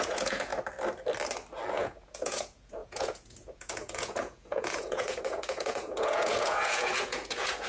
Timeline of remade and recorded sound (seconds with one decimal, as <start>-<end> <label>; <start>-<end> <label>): 0.0-0.5 remade; 0.5-1.7 recorded; 1.7-7.7 remade